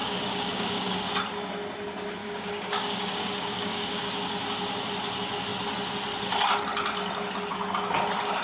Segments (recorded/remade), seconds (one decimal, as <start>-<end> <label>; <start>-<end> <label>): 0.0-0.9 remade; 0.9-2.2 recorded; 2.2-4.0 remade; 4.0-8.4 recorded